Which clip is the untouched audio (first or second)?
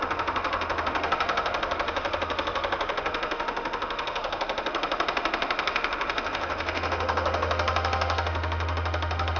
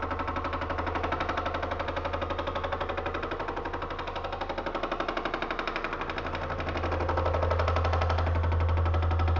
second